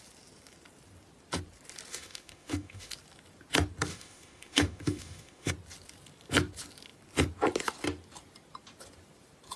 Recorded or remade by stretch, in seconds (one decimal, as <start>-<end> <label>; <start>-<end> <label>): 0.0-1.9 recorded; 1.9-2.9 remade; 2.9-3.9 recorded; 3.9-5.5 remade; 5.5-9.6 recorded